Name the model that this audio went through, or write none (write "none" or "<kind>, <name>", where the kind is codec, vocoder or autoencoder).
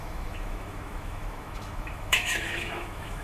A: autoencoder, DAC-VAE